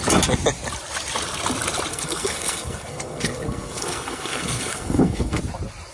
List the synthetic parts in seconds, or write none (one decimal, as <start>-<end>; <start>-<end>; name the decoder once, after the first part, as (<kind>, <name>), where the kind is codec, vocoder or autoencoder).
1.9-5.4 (codec, SNAC)